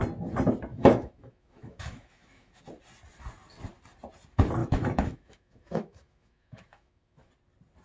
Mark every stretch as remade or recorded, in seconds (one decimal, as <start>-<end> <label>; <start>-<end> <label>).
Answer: 0.0-0.7 recorded; 0.7-2.6 remade; 2.6-4.6 recorded; 4.6-7.3 remade; 7.3-7.8 recorded